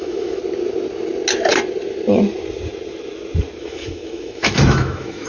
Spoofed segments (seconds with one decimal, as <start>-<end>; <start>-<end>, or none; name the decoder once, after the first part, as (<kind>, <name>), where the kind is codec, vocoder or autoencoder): 0.0-0.4 (autoencoder, DAC-VAE); 3.6-5.3